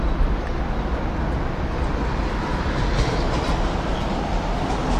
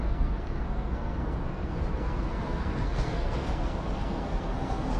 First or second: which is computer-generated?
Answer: second